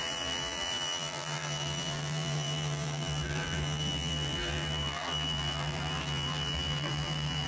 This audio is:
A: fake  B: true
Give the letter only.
A